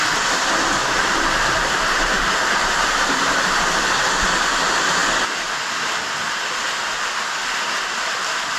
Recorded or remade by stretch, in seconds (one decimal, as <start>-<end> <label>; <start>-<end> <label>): 0.0-0.8 recorded; 0.8-3.8 remade; 3.8-8.6 recorded